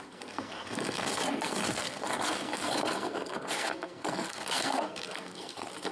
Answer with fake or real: fake